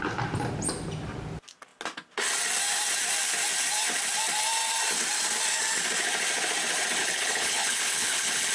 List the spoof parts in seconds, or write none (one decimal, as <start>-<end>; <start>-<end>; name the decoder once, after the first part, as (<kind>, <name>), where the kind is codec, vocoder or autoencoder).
7.0-8.5 (codec, HILCodec)